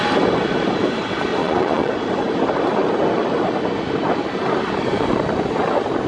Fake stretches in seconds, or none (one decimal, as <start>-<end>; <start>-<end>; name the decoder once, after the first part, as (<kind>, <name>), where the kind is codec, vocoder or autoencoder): 1.4-1.9 (vocoder, Vocos)

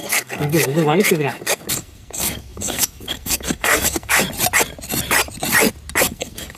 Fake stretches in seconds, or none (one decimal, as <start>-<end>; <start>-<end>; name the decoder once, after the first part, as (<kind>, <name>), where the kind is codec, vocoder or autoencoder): 0.0-4.2 (codec, SNAC); 6.0-6.6

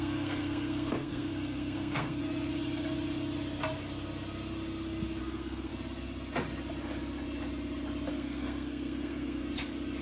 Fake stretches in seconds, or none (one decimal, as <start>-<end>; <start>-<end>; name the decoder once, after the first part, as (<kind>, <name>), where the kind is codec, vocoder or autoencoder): 0.0-2.2 (codec, SNAC); 5.2-5.7; 8.1-9.4

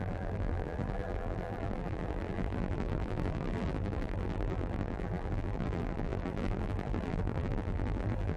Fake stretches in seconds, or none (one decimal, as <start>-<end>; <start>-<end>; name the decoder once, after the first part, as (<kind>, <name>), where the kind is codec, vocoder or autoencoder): 0.0-8.4 (vocoder, BigVGAN v2)

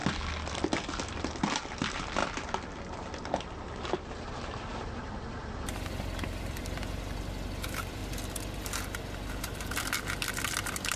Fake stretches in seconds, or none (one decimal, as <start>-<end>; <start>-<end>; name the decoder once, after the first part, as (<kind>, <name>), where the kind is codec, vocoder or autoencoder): 0.5-2.2 (vocoder, BigVGAN v2); 5.6-8.0; 9.3-11.0

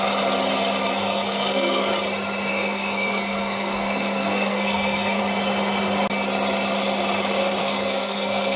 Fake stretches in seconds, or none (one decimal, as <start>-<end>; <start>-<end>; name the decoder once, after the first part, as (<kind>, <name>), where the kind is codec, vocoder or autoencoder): 0.9-1.9 (codec, SNAC); 2.5-5.2; 7.6-8.6